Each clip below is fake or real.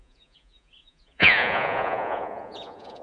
fake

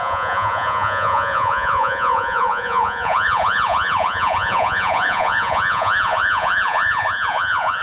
fake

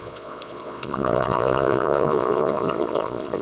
fake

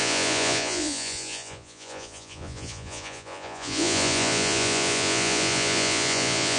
fake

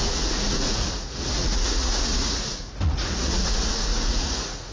fake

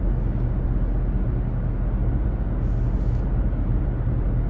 real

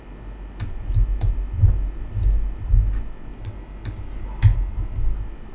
real